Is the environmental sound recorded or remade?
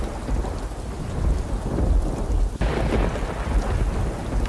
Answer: recorded